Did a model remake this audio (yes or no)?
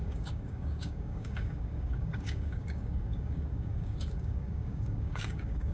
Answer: yes